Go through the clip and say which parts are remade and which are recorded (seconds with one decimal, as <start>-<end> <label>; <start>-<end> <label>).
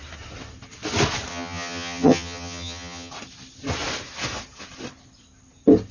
0.0-1.3 recorded; 1.3-3.1 remade; 3.1-5.9 recorded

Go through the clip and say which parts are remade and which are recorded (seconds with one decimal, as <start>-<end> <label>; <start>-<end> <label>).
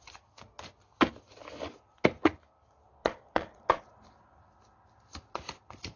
0.0-3.0 recorded; 3.0-3.8 remade; 3.8-6.0 recorded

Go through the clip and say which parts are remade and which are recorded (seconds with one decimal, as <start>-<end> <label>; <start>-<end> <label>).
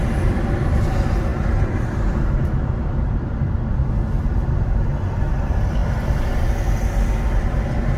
0.0-8.0 recorded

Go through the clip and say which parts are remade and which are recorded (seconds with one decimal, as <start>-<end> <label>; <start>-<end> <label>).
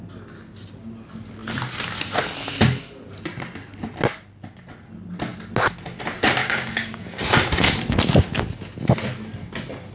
0.0-6.4 recorded; 6.4-7.2 remade; 7.2-9.9 recorded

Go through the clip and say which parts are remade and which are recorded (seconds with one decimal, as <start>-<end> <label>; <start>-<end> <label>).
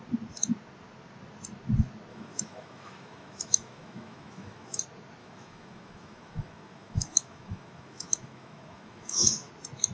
0.0-2.1 recorded; 2.1-4.8 remade; 4.8-5.2 recorded; 5.2-9.5 remade; 9.5-9.9 recorded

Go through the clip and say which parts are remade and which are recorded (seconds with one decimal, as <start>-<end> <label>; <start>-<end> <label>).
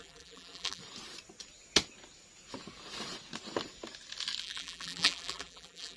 0.0-0.8 remade; 0.8-4.4 recorded; 4.4-6.0 remade